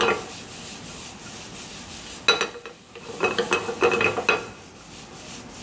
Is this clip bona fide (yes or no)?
yes